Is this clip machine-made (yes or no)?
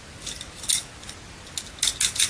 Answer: no